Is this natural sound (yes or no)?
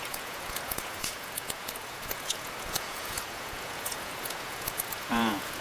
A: no